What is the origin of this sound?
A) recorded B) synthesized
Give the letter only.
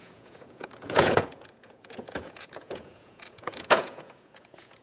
B